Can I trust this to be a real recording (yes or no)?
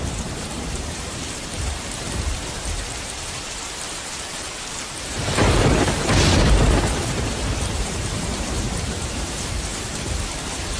no